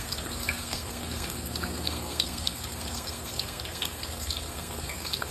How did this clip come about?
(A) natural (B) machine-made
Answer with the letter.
B